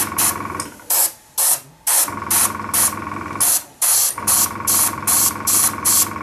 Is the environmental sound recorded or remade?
recorded